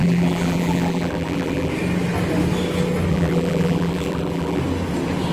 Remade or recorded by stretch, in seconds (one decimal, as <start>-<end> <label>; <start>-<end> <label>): 0.0-1.7 remade; 1.7-3.1 recorded; 3.1-4.6 remade; 4.6-5.3 recorded